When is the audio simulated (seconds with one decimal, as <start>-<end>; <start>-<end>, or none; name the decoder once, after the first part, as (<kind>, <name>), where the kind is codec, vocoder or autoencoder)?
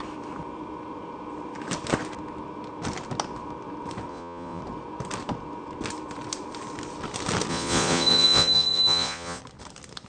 4.1-4.6 (vocoder, Vocos); 7.5-9.4